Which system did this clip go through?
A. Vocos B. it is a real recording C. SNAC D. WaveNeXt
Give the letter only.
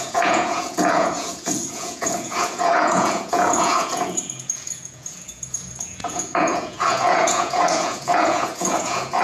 A